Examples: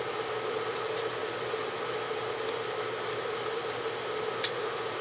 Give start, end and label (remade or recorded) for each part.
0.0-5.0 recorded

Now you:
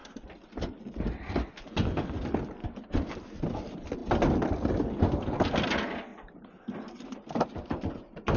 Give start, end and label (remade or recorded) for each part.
0.0-6.1 recorded; 6.1-8.4 remade

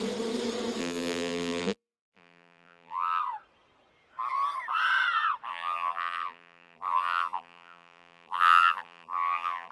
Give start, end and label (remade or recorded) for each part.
0.0-0.8 recorded; 0.8-3.2 remade; 3.2-5.5 recorded; 5.5-9.7 remade

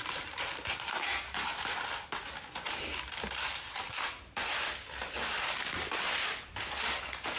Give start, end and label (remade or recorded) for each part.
0.0-1.5 remade; 1.5-2.8 recorded; 2.8-4.4 remade; 4.4-5.3 recorded; 5.3-7.4 remade

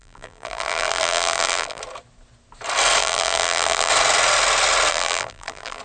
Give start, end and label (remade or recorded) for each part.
0.0-1.8 remade; 1.8-3.0 recorded; 3.0-3.9 remade; 3.9-4.9 recorded; 4.9-5.8 remade

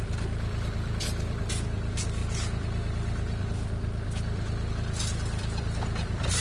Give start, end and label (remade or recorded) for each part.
0.0-6.4 remade

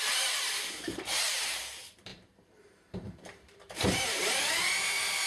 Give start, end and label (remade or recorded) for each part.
0.0-5.3 remade

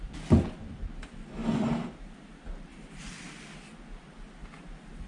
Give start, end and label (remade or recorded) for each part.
0.0-1.4 recorded; 1.4-2.1 remade; 2.1-5.1 recorded